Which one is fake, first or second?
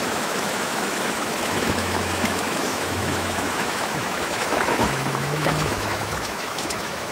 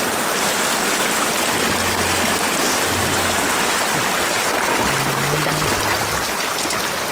first